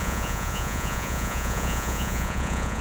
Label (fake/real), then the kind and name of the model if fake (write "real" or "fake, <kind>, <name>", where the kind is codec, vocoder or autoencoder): fake, vocoder, Vocos